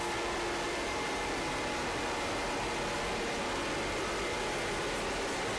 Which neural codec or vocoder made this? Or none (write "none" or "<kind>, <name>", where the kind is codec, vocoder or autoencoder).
none